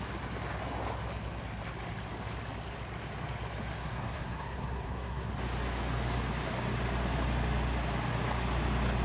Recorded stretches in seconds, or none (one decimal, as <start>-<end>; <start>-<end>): 0.0-3.8; 5.3-9.0

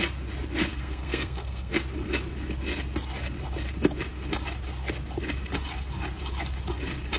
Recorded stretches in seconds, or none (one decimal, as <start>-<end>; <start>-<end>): 0.0-0.7; 1.7-7.2